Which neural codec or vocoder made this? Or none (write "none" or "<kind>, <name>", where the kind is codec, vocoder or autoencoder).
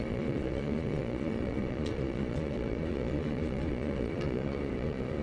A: vocoder, Vocos